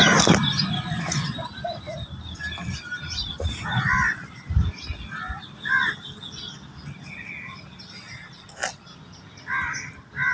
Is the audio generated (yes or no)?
no